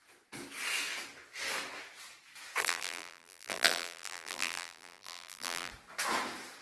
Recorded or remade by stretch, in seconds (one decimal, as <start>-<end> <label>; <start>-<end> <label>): 0.0-2.6 recorded; 2.6-5.7 remade; 5.7-6.6 recorded